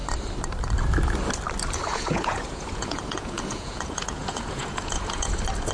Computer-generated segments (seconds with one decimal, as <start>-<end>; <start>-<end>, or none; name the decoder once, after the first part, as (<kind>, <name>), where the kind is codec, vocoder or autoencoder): 1.9-5.3 (vocoder, Vocos)